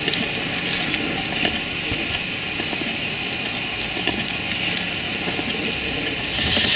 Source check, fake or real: real